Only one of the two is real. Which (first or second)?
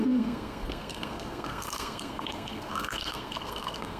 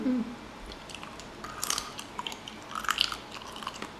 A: second